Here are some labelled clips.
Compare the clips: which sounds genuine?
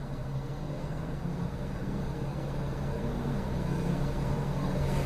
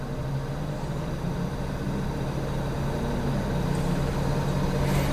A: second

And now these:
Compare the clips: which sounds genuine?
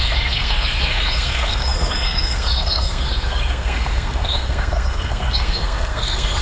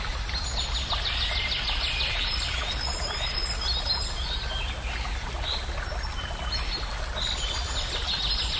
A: second